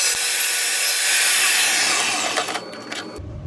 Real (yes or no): yes